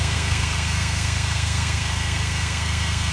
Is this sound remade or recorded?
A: remade